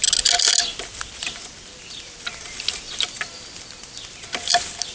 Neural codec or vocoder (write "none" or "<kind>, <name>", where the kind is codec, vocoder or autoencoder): none